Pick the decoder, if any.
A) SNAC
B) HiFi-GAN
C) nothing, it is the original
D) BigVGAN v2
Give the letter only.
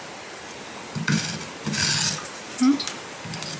C